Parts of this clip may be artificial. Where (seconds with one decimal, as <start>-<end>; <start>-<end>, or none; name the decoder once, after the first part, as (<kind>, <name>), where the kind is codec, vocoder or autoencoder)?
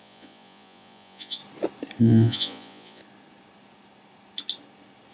0.0-1.4 (vocoder, Vocos); 2.0-3.0